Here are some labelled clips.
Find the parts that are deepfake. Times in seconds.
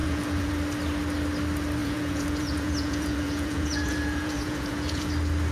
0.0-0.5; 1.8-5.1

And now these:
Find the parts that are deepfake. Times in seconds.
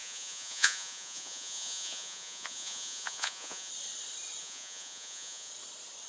0.0-3.7; 4.4-5.5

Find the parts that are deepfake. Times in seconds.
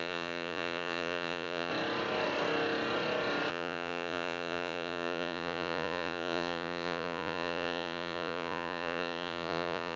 0.0-1.7; 3.5-10.0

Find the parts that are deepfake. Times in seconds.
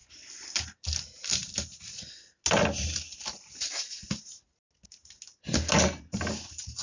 none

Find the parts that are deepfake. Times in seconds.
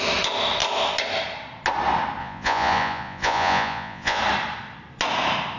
2.2-4.2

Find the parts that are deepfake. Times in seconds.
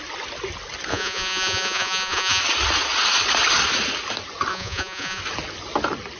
0.9-2.4; 4.5-5.2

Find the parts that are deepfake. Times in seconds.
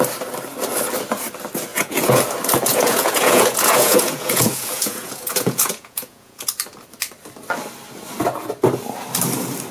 1.7-2.2; 2.7-6.5